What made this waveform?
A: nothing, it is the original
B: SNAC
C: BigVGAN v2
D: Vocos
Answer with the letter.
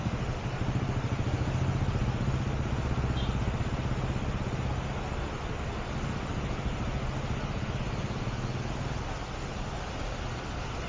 A